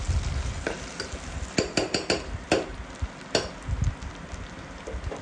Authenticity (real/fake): real